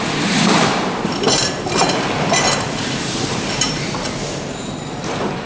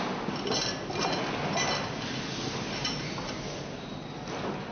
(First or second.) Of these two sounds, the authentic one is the second